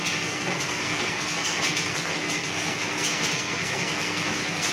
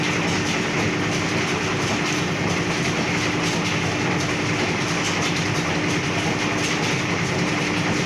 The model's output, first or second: first